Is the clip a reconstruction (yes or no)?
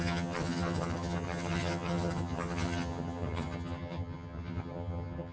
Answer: yes